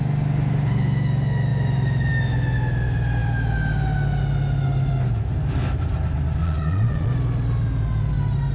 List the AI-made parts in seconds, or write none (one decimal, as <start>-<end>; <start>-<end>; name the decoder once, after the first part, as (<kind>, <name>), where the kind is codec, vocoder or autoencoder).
6.4-7.1 (vocoder, Vocos)